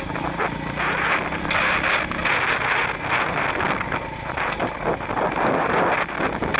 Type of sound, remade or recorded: recorded